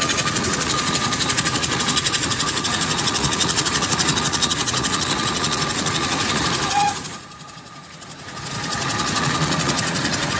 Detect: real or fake fake